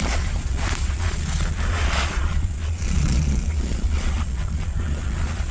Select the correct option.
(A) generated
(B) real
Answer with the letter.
A